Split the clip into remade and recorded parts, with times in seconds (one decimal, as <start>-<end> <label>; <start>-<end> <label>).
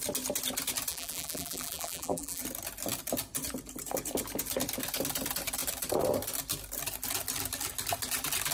0.0-0.9 recorded; 0.9-2.4 remade; 2.4-8.5 recorded